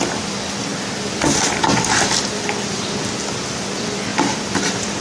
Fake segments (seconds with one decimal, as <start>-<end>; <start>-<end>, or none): none